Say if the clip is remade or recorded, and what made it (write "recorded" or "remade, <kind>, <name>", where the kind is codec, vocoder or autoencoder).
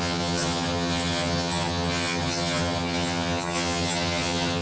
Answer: remade, vocoder, HiFi-GAN